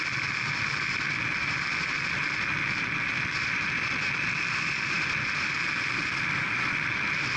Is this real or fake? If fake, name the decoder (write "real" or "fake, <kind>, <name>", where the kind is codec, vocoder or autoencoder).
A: fake, vocoder, BigVGAN v2